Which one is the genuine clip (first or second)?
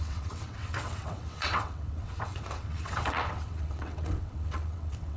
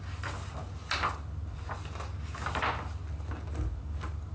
second